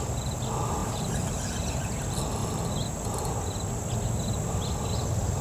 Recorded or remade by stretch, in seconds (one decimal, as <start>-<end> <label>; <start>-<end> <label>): 0.0-0.8 recorded; 0.8-2.0 remade; 2.0-5.4 recorded